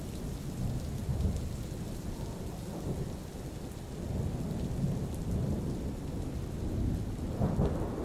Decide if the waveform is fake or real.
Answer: real